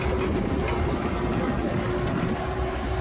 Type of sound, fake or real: real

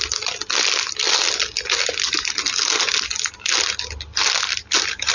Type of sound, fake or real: real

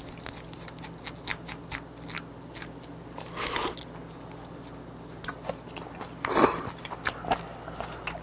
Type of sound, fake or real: real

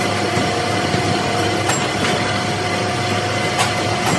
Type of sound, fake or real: real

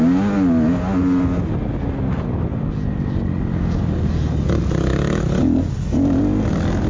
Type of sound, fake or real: real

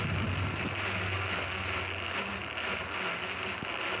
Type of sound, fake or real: real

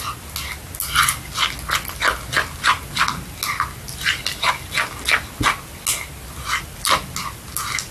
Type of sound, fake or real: real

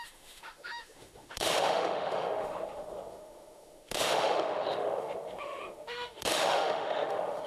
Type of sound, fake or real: fake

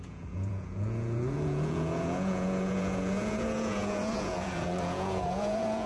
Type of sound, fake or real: fake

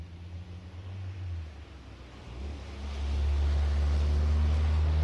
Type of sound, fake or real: real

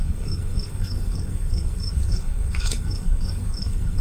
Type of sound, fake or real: fake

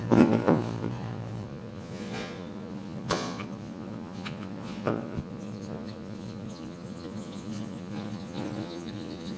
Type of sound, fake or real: fake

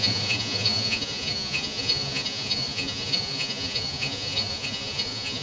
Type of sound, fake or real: fake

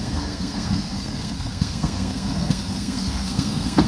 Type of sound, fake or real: fake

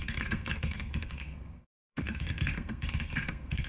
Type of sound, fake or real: fake